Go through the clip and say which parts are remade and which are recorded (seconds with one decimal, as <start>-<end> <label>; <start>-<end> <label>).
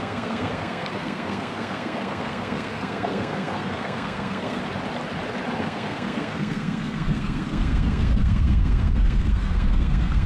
0.0-4.6 remade; 4.6-5.6 recorded; 5.6-10.3 remade